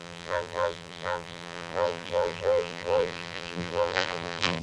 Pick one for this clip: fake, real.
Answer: fake